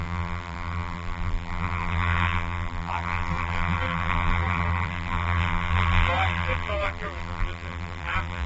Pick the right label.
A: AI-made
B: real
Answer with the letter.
A